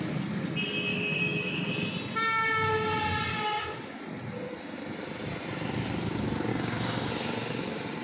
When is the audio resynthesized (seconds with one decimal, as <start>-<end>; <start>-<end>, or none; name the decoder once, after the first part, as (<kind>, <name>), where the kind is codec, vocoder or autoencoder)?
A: 0.9-1.7 (codec, DAC); 3.3-4.0; 6.5-7.1